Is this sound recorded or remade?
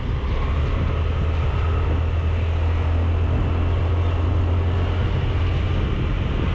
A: recorded